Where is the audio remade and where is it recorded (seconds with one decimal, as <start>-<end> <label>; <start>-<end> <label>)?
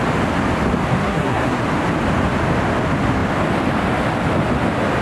0.0-1.0 recorded; 1.0-1.6 remade; 1.6-5.0 recorded